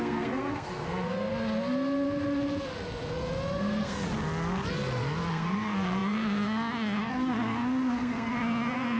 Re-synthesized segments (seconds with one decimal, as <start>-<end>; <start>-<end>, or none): 0.0-1.3; 3.6-4.0; 5.3-9.0

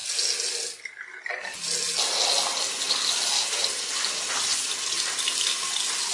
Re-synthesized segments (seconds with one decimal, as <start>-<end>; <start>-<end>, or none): none

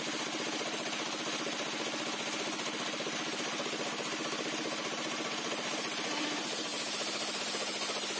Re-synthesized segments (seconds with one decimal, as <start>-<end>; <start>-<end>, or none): none